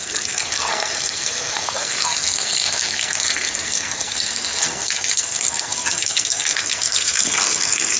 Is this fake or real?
fake